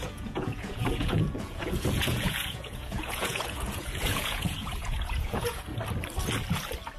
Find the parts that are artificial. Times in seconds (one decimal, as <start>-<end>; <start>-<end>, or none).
0.0-5.7